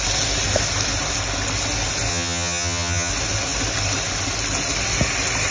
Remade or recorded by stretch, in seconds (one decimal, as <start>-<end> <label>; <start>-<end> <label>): 0.0-2.1 recorded; 2.1-3.1 remade; 3.1-5.5 recorded